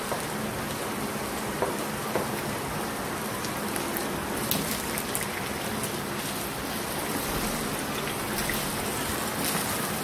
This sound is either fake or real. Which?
real